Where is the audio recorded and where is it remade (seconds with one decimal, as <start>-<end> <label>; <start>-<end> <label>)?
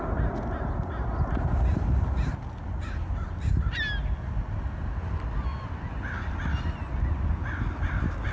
0.0-8.3 recorded